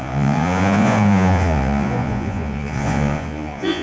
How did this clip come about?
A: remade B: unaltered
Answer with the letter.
A